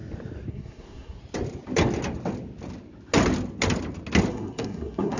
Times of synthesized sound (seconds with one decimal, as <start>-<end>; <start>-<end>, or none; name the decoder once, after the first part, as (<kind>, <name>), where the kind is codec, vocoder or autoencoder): 0.5-1.2 (codec, SNAC); 4.3-5.2